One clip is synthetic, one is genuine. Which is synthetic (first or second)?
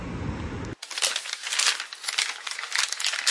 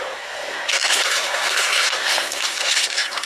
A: second